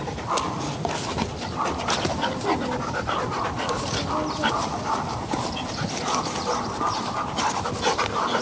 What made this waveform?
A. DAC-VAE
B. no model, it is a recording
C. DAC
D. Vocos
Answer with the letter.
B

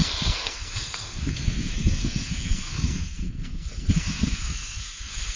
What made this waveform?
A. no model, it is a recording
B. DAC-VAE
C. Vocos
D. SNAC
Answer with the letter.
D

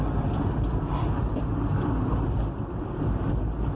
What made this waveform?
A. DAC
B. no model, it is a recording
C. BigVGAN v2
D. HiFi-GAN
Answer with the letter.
B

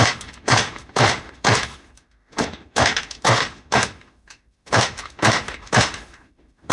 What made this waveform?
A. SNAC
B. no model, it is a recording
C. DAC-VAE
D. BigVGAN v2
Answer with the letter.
C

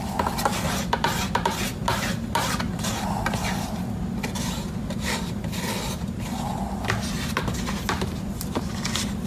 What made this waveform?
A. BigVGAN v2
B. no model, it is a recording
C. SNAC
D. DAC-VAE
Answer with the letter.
B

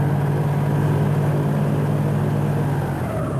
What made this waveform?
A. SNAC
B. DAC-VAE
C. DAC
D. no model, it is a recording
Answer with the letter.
D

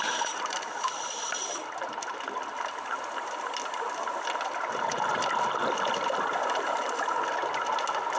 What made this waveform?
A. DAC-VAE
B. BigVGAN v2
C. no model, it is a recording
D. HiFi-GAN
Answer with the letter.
C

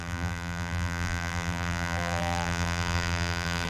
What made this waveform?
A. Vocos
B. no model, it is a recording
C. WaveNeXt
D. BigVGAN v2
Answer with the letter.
D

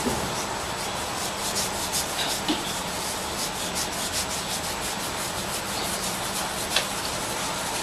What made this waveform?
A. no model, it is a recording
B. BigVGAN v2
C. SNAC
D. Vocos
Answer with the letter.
A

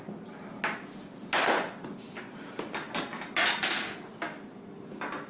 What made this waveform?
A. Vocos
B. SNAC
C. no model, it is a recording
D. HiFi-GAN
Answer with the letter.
C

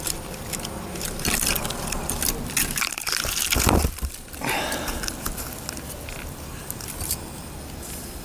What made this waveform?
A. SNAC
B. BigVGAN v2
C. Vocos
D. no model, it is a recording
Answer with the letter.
D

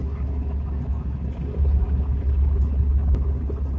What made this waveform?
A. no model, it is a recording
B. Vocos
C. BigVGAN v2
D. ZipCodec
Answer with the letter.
A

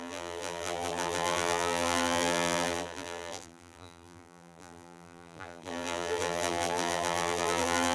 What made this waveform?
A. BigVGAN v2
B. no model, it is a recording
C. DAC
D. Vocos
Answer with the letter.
A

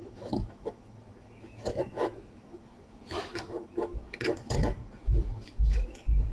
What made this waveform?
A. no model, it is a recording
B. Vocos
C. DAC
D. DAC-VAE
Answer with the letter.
D